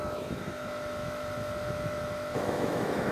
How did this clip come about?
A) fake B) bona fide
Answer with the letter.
A